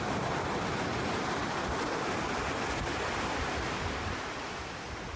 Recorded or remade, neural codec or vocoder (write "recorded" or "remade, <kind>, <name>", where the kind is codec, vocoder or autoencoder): recorded